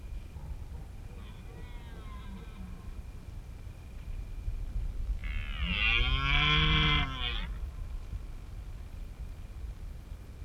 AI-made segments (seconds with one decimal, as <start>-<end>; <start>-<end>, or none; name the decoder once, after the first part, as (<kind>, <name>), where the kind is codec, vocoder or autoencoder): none